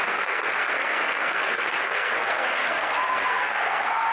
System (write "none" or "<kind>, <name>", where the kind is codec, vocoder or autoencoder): codec, SNAC